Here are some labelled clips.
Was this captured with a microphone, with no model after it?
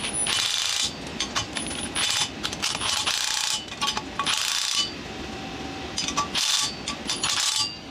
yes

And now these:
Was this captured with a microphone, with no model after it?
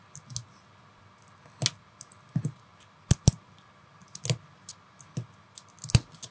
yes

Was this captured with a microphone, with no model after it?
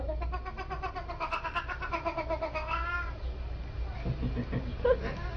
yes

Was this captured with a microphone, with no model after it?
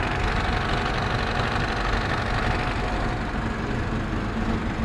yes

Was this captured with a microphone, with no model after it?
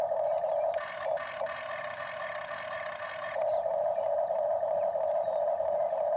no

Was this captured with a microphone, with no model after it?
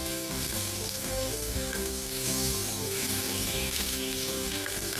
no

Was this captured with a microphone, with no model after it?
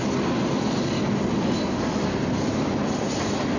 yes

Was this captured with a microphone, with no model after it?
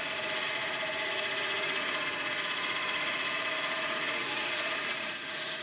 no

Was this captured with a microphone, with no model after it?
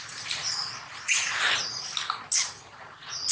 yes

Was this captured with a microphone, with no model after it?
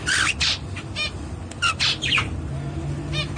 yes